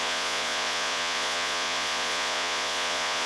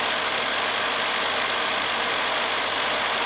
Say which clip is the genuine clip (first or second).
second